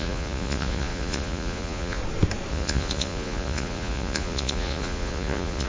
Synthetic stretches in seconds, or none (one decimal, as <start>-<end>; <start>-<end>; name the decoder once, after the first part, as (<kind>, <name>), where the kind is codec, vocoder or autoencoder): 0.0-2.0 (vocoder, Vocos); 2.5-5.7